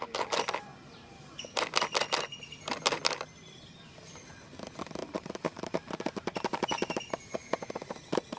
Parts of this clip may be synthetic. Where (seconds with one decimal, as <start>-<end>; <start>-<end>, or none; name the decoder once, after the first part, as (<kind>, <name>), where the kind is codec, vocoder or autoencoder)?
0.7-1.2 (vocoder, BigVGAN v2); 5.0-7.7